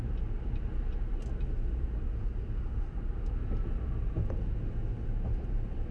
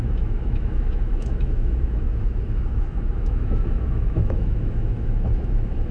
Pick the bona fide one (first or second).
first